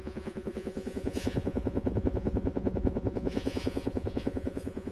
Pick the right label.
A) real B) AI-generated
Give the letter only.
B